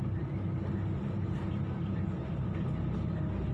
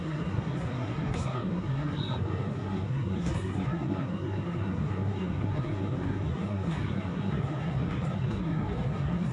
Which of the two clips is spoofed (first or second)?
second